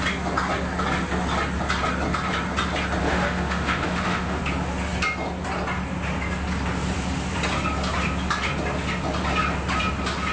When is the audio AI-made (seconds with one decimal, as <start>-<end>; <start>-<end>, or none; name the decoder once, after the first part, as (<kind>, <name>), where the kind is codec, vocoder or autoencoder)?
3.0-4.4 (autoencoder, DAC-VAE)